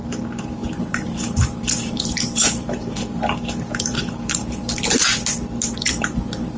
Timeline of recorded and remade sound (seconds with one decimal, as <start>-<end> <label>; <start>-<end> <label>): 0.0-5.0 remade; 5.0-5.7 recorded; 5.7-6.6 remade